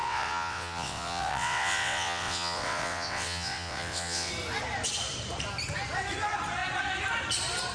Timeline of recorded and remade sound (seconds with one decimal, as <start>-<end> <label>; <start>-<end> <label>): 0.0-4.3 remade; 4.3-7.7 recorded